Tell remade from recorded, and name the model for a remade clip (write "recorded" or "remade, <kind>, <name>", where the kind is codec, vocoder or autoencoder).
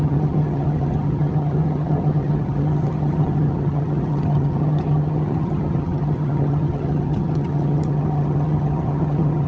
remade, vocoder, HiFi-GAN